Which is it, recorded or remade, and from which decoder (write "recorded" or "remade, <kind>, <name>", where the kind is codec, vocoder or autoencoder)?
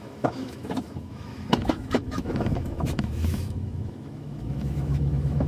remade, autoencoder, DAC-VAE